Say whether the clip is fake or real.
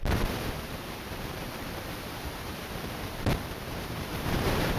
fake